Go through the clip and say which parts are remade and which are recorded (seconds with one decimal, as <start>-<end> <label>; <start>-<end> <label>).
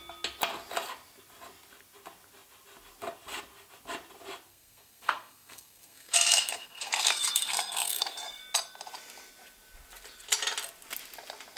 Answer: 0.0-4.5 recorded; 4.5-8.4 remade; 8.4-11.6 recorded